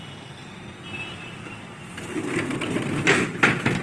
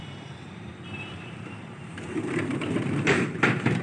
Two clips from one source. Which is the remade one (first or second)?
second